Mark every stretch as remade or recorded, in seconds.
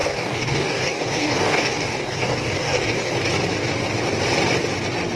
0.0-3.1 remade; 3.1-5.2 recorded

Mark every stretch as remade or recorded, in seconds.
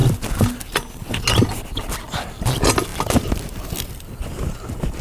0.0-5.0 recorded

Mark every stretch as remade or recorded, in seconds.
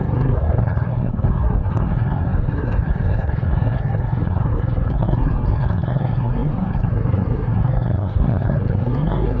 0.0-9.4 remade